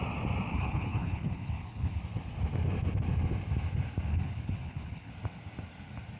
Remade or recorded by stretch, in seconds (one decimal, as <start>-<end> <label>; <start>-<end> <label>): 0.0-0.5 recorded; 0.5-2.0 remade; 2.0-4.1 recorded; 4.1-5.1 remade; 5.1-6.2 recorded